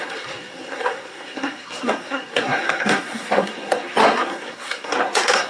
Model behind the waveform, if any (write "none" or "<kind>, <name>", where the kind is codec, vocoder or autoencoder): codec, SNAC